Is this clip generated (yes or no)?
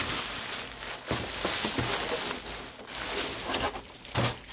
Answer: no